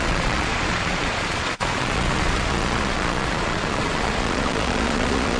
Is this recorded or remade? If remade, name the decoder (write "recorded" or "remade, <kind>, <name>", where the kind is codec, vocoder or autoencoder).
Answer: remade, vocoder, Vocos